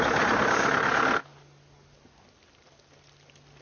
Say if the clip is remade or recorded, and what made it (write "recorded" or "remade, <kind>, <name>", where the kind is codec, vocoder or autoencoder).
recorded